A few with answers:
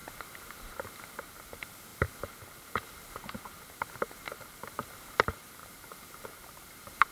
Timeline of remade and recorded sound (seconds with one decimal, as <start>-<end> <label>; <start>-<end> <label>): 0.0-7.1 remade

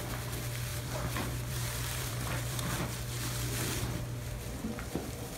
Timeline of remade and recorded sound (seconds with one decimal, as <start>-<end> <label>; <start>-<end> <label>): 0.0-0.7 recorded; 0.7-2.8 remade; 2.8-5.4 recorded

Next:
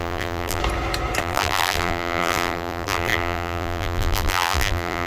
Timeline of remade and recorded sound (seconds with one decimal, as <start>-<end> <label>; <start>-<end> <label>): 0.0-0.6 remade; 0.6-1.2 recorded; 1.2-5.1 remade